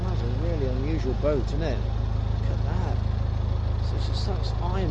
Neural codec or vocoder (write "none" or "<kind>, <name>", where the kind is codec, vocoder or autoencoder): none